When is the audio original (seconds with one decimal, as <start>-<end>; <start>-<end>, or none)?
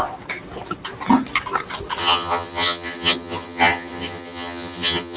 0.0-2.0